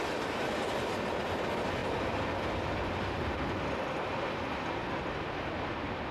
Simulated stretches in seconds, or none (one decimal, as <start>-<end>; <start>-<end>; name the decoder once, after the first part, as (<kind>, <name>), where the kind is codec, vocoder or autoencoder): none